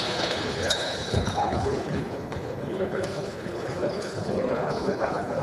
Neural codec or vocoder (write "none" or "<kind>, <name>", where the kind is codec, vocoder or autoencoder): codec, HILCodec